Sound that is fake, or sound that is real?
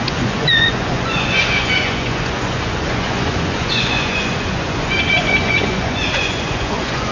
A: fake